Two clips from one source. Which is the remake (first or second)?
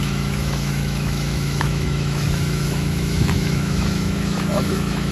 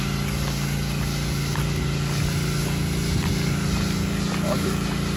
first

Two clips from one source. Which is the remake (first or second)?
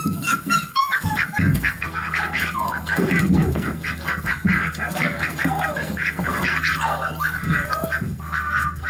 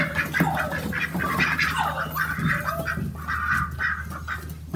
first